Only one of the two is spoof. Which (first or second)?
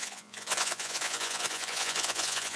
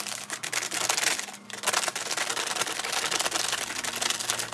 first